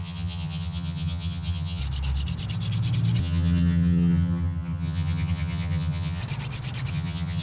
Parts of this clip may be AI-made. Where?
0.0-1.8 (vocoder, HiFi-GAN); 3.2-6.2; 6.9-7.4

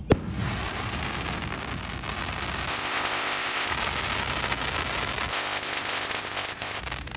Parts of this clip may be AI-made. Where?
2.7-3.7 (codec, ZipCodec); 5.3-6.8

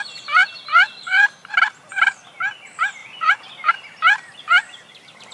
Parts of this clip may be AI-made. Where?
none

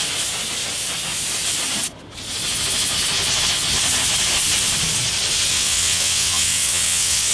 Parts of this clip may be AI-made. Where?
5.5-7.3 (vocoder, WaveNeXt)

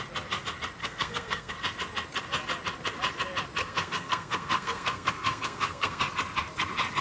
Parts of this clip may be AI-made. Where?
0.8-1.5 (codec, SNAC); 3.6-6.0

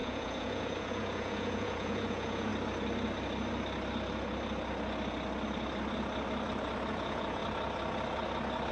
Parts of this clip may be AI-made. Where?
0.0-2.5 (vocoder, Vocos); 6.9-7.4

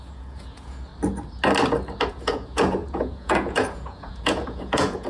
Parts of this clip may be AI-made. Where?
0.0-0.9 (vocoder, Vocos); 2.1-5.1

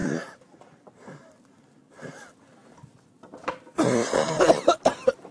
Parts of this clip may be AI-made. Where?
0.0-2.6 (vocoder, BigVGAN v2); 3.5-5.3